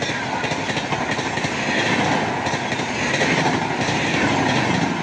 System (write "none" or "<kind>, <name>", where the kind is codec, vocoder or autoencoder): none